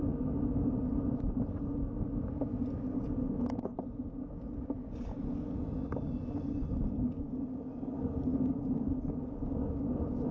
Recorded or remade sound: recorded